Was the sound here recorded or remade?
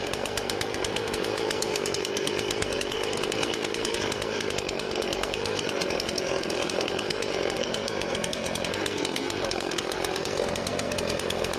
remade